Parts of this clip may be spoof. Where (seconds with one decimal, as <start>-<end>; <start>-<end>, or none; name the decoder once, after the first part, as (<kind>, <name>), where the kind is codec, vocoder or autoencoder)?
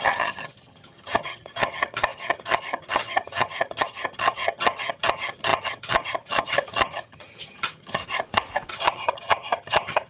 0.0-8.0 (vocoder, HiFi-GAN); 8.7-10.1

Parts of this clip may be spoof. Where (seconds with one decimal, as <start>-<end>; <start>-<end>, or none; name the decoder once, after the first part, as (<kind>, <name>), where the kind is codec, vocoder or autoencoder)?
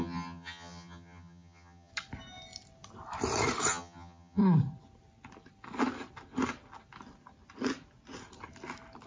0.0-1.9 (vocoder, HiFi-GAN); 3.7-4.4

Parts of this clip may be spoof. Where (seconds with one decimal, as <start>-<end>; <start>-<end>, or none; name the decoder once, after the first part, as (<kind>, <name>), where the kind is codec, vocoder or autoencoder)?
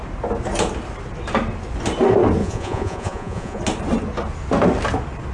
2.4-3.6 (vocoder, Vocos)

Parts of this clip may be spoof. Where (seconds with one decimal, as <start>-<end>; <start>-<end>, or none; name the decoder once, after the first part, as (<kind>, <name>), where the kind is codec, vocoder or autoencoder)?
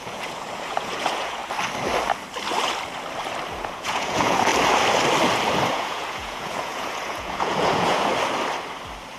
0.0-1.4 (vocoder, Vocos); 3.5-4.5; 5.7-8.1